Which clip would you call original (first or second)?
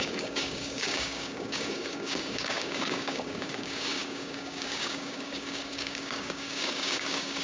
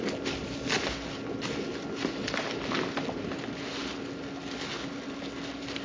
second